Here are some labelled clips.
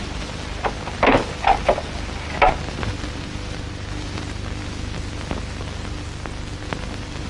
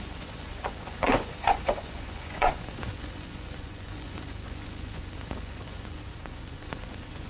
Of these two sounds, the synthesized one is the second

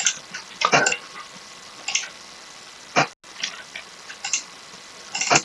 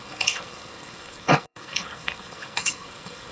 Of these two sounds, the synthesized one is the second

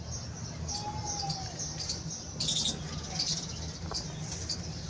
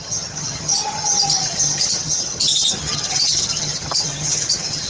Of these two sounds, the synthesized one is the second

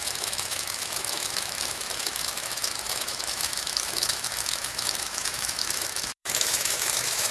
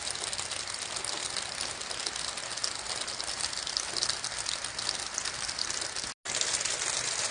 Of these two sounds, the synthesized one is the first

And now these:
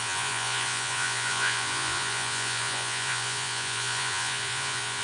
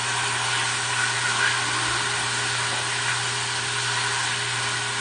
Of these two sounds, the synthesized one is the first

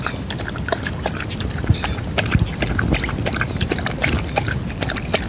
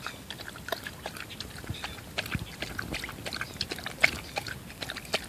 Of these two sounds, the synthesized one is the first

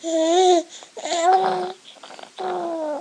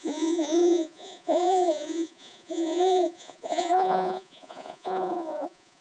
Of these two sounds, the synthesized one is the second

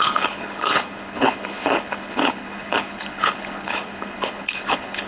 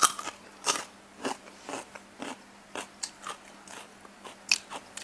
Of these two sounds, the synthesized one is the first